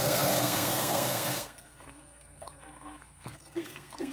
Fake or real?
fake